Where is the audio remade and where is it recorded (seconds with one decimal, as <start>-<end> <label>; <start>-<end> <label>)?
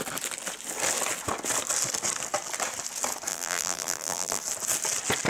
0.0-3.3 recorded; 3.3-4.4 remade; 4.4-5.3 recorded